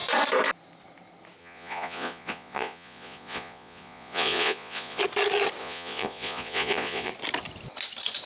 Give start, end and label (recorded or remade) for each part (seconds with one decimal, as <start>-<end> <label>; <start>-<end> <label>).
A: 0.0-1.4 recorded; 1.4-5.0 remade; 5.0-5.6 recorded; 5.6-7.1 remade; 7.1-8.3 recorded